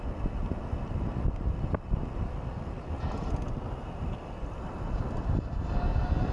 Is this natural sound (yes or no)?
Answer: yes